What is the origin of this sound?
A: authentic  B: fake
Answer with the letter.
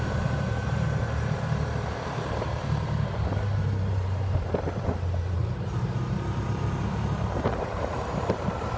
B